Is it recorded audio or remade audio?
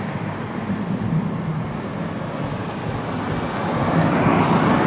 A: recorded